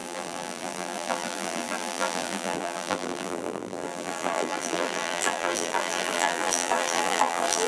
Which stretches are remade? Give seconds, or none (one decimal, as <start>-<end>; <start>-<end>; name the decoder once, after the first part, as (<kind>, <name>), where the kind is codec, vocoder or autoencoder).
0.0-7.7 (vocoder, BigVGAN v2)